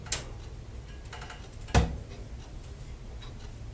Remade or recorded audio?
recorded